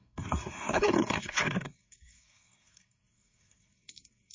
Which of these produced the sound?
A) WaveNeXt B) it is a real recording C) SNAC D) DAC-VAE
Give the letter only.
C